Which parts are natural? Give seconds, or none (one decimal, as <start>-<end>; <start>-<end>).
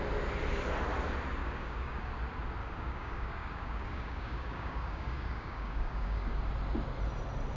0.0-1.4; 2.1-2.6; 6.4-7.6